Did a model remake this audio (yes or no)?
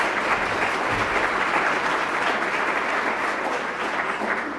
no